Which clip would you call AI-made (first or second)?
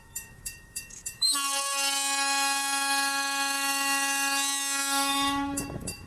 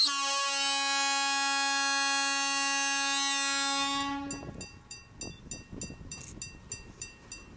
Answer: first